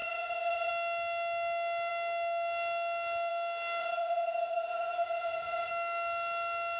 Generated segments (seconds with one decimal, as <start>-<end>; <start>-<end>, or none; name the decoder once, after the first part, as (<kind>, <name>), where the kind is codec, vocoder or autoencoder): 0.0-0.7 (vocoder, Vocos); 3.8-5.7